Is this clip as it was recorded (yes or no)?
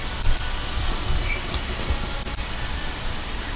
yes